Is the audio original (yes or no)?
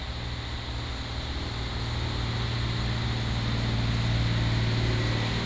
yes